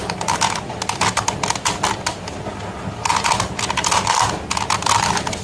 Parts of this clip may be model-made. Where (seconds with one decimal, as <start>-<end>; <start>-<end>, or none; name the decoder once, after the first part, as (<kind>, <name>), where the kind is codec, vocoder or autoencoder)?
none